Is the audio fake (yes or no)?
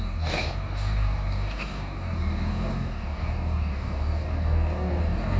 yes